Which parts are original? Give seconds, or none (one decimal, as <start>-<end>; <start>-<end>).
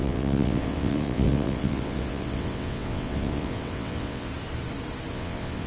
4.3-5.1